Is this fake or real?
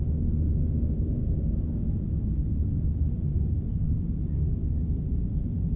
real